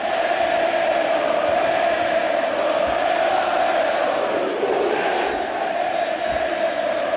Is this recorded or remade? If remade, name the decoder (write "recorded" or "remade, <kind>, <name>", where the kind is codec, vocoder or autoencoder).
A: recorded